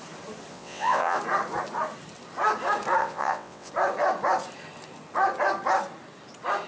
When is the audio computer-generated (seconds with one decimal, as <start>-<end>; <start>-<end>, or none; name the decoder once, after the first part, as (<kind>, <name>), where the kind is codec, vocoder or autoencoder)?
0.5-1.2 (vocoder, WaveNeXt); 3.0-3.7